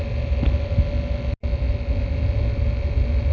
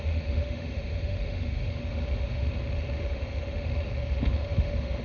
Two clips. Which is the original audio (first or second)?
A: first